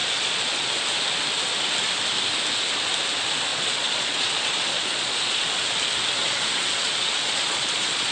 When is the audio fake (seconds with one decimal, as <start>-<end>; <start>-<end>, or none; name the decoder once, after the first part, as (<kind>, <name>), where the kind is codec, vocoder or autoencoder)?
0.0-0.7 (vocoder, Vocos); 3.5-5.7; 6.2-8.1